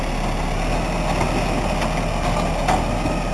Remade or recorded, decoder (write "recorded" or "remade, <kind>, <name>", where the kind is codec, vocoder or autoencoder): recorded